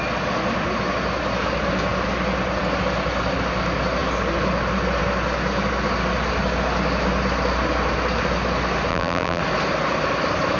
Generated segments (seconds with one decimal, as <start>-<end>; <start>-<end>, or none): 8.9-9.4